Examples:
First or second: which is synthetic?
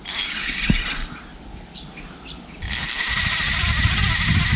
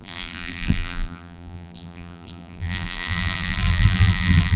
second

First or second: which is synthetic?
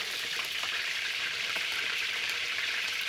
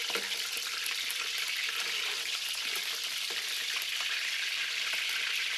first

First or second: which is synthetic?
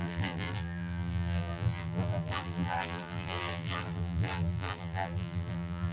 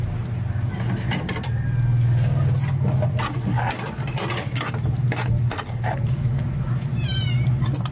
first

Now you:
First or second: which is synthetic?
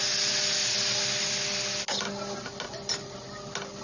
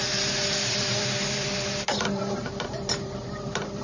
second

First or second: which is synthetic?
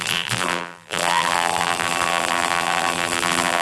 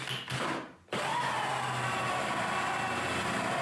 first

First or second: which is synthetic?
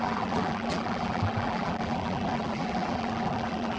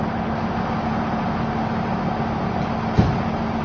first